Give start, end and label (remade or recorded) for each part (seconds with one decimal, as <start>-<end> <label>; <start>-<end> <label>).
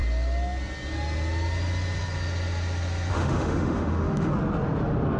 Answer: 0.0-3.1 recorded; 3.1-4.3 remade; 4.3-5.2 recorded